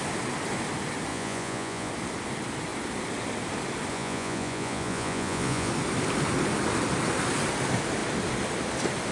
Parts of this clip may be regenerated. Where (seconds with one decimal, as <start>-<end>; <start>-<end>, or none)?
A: 1.1-1.9; 3.9-5.7